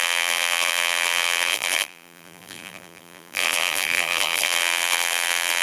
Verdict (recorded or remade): remade